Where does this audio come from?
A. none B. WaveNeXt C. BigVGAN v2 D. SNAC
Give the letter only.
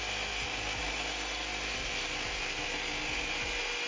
A